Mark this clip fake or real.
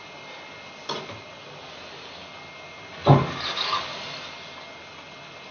real